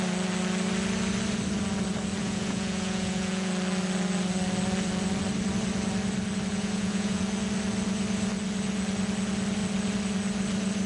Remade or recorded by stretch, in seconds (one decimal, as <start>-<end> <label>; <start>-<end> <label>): 0.0-2.2 recorded; 2.2-3.5 remade; 3.5-6.5 recorded; 6.5-7.2 remade; 7.2-10.9 recorded